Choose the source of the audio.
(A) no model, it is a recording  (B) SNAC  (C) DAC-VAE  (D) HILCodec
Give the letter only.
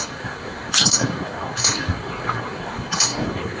B